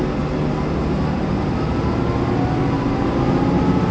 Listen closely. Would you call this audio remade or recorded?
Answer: recorded